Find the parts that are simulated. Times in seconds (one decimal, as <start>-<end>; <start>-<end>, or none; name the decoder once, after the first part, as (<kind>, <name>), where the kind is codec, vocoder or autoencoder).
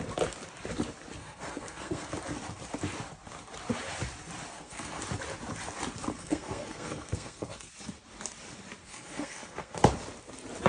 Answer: 1.2-2.1 (codec, SNAC); 4.5-5.0; 6.1-7.7; 8.8-9.8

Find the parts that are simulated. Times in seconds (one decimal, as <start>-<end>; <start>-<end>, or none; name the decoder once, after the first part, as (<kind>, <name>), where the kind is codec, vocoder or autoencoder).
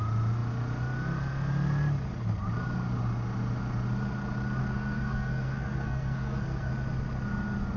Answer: 4.6-6.7 (codec, SNAC)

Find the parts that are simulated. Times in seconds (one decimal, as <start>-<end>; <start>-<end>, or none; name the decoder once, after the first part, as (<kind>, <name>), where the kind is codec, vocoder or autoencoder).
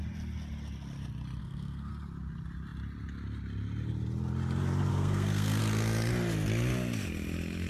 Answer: 1.4-1.9 (codec, SNAC); 4.9-5.6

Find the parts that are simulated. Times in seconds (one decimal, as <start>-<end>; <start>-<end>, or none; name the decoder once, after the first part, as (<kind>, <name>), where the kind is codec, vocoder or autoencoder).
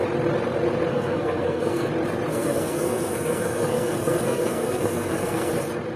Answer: 0.9-1.9 (codec, SNAC); 2.3-5.5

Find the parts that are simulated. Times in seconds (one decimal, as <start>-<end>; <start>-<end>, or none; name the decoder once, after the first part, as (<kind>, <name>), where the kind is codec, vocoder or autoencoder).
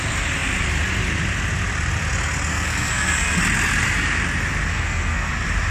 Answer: 2.5-3.4 (codec, SNAC); 4.7-5.3